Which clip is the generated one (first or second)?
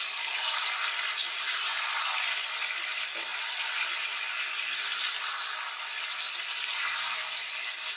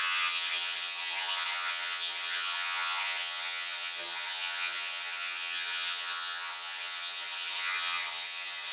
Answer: second